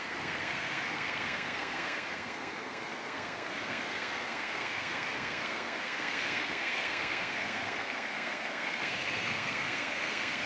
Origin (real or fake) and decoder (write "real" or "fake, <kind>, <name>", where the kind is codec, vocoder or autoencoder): fake, codec, SNAC